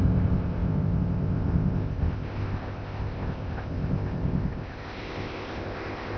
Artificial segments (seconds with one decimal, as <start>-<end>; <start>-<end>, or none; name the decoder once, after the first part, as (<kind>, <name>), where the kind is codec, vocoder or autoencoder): 0.0-6.2 (codec, ZipCodec)